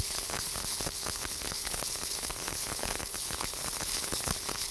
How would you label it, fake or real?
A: fake